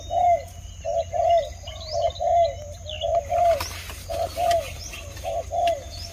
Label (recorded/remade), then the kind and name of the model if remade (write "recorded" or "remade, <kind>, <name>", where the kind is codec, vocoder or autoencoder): recorded